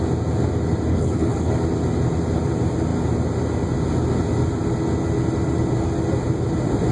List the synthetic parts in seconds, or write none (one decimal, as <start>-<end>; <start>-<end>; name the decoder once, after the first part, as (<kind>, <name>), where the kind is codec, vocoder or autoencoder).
0.9-1.5 (codec, HILCodec)